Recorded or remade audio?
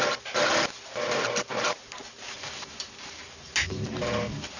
recorded